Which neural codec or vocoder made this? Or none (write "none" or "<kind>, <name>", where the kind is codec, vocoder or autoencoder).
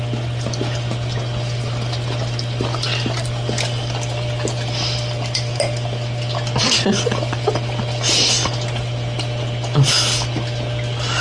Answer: none